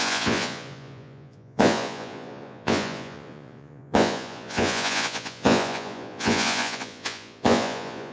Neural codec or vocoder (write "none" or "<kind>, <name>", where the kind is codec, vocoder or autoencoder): vocoder, Vocos